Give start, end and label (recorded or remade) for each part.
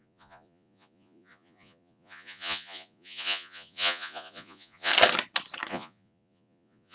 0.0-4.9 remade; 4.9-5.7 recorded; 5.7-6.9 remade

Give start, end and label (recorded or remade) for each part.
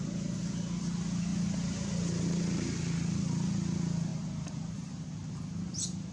0.0-6.1 recorded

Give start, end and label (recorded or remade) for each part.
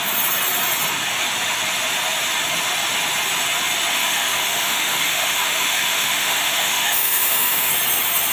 0.0-3.9 recorded; 3.9-7.7 remade; 7.7-8.3 recorded